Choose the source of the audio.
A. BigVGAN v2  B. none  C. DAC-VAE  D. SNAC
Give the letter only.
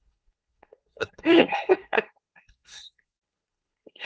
D